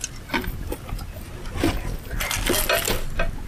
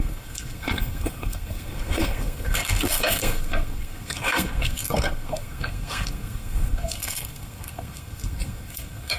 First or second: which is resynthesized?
second